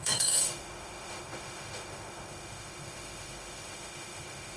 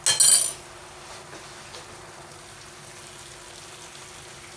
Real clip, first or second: second